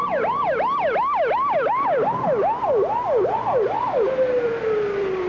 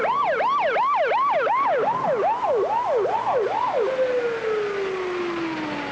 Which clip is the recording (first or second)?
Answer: second